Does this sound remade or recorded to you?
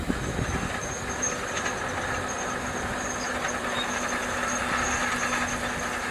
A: recorded